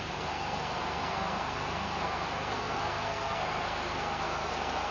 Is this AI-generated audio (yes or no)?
yes